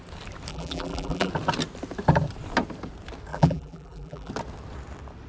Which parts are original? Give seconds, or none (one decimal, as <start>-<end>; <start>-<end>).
0.0-0.5; 1.3-3.3; 4.3-5.3

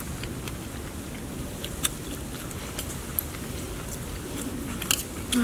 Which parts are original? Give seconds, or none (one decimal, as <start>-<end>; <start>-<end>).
0.0-5.4